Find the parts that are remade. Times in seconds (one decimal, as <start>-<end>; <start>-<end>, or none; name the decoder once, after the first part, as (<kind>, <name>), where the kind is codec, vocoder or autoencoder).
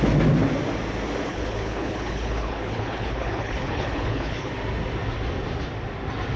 1.3-4.5 (codec, HILCodec)